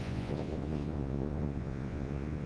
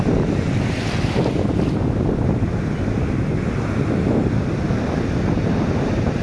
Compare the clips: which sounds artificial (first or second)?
first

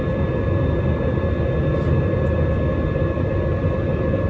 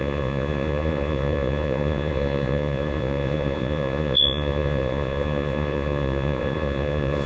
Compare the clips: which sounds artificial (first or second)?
second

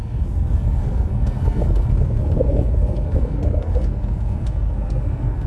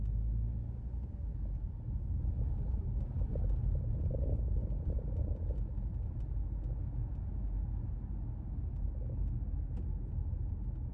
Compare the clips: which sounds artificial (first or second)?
first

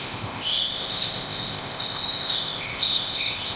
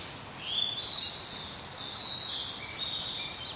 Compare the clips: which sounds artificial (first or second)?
first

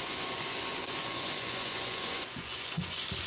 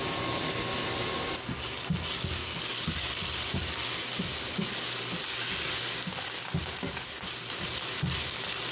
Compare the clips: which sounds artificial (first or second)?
first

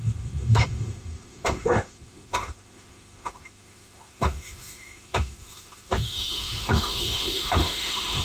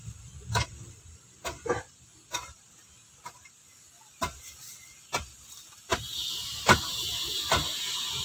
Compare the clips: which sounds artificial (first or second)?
first